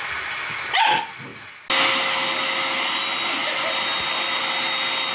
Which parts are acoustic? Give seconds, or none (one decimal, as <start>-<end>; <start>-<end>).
0.0-5.1

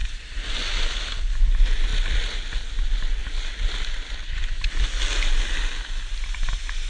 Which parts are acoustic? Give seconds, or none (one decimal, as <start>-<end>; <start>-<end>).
0.0-6.9

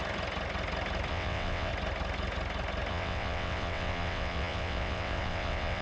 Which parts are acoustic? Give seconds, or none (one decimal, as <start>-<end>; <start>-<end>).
0.0-1.1; 1.7-2.9

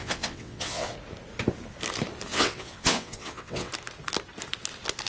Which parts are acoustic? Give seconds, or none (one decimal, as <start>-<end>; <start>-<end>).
0.9-2.3; 3.7-5.1